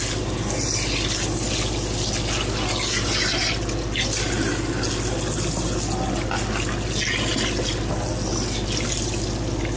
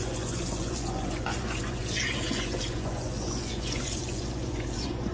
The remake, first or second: second